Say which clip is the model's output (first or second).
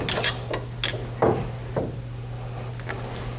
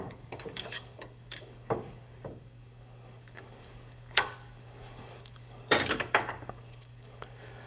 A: second